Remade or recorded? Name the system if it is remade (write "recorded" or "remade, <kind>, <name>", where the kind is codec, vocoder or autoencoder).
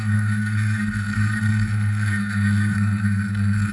remade, codec, SNAC